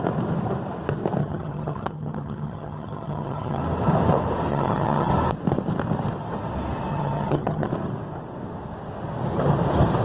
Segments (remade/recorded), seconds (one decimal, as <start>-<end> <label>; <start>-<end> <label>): 0.0-1.2 recorded; 1.2-3.6 remade; 3.6-4.5 recorded; 4.5-5.1 remade; 5.1-6.9 recorded; 6.9-7.7 remade; 7.7-10.0 recorded